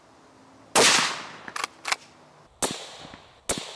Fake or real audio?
real